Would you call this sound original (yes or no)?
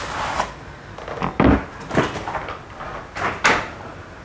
yes